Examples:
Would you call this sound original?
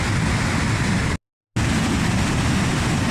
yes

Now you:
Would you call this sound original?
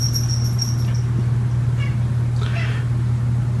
yes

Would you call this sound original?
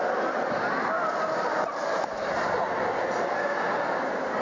yes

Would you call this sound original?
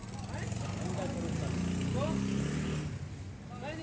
yes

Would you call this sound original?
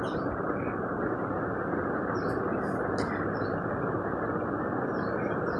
yes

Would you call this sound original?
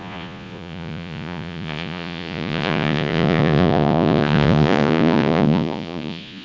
no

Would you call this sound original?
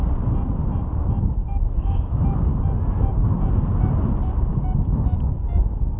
yes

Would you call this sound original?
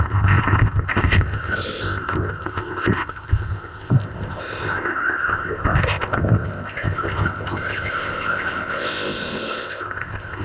no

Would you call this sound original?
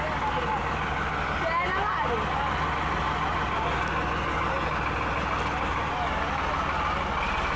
yes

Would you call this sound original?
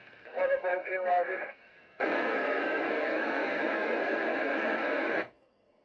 no